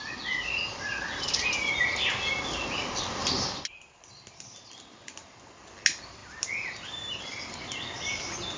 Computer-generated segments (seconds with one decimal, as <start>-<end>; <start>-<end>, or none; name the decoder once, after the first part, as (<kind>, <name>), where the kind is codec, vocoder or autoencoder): none